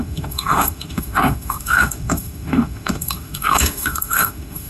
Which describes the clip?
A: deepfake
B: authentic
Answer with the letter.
A